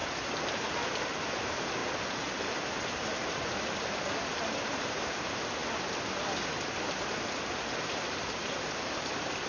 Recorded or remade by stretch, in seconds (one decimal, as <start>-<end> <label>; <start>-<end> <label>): 0.0-1.4 recorded; 1.4-1.8 remade; 1.8-2.7 recorded; 2.7-5.6 remade; 5.6-6.8 recorded; 6.8-9.5 remade